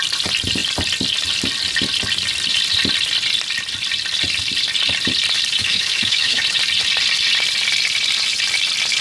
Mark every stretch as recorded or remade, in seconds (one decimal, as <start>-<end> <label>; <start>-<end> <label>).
0.0-5.6 recorded; 5.6-6.4 remade; 6.4-9.0 recorded